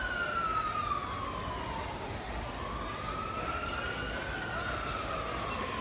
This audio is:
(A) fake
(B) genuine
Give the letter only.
B